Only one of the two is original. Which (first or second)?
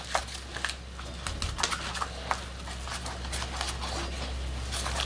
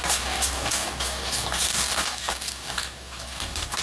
first